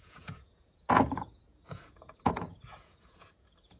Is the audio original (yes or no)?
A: no